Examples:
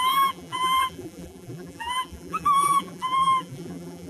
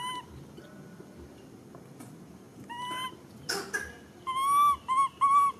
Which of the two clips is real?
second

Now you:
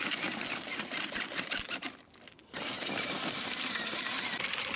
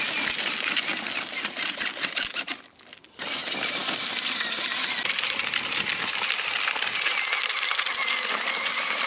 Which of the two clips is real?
second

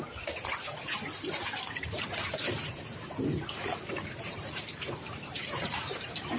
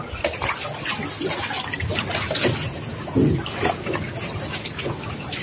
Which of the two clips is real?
second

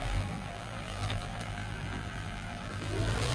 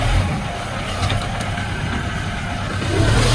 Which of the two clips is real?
second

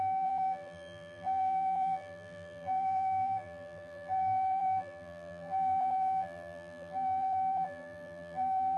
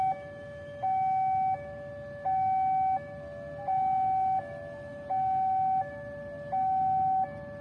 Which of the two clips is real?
second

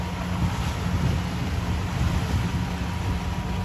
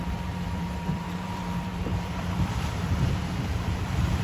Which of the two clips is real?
first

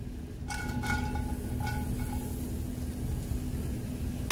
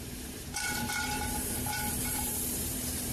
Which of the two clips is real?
first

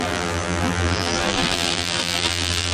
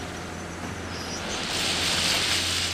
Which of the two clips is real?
second